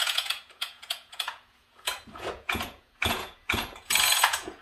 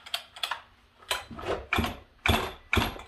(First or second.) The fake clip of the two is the first